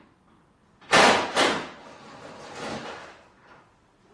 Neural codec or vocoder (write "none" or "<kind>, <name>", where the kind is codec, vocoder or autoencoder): none